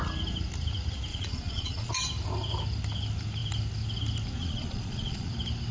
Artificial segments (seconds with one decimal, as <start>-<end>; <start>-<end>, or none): 1.1-1.9; 4.4-5.3